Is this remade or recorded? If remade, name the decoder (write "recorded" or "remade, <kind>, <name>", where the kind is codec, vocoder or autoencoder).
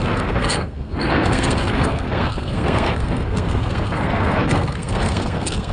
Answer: remade, codec, SNAC